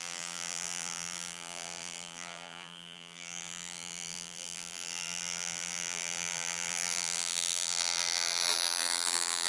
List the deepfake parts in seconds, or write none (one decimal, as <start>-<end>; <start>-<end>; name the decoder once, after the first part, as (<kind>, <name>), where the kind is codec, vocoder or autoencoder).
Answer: 0.0-9.5 (vocoder, BigVGAN v2)